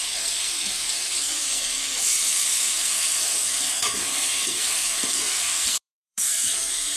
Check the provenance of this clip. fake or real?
fake